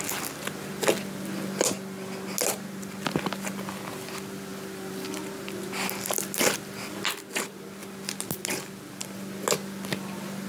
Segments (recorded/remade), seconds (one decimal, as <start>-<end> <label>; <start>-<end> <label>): 0.0-10.5 recorded